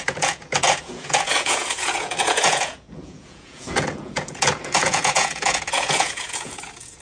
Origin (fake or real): fake